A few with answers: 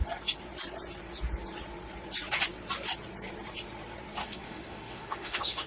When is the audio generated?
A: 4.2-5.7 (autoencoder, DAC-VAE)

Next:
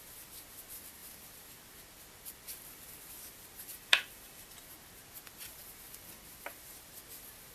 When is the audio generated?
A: 3.7-4.5 (vocoder, BigVGAN v2)

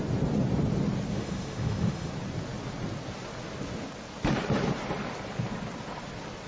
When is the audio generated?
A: 1.1-2.1 (autoencoder, DAC-VAE)